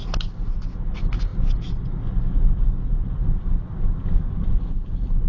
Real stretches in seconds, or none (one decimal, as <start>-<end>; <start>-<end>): 0.0-5.3

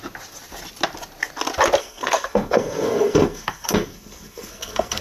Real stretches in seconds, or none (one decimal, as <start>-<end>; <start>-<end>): 0.0-1.8

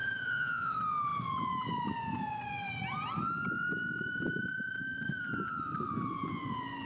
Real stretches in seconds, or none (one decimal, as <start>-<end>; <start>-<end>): 0.7-6.9

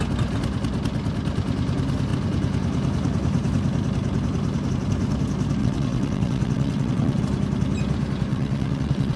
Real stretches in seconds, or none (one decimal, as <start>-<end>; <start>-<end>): 0.0-5.6; 7.2-8.3

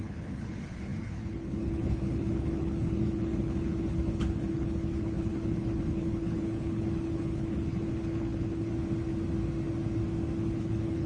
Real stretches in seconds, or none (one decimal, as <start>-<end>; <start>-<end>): 8.7-10.6